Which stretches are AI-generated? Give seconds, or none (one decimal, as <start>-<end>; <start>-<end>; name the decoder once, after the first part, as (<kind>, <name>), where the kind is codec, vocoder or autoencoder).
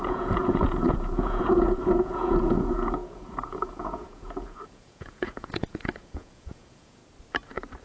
0.0-7.0 (vocoder, Vocos)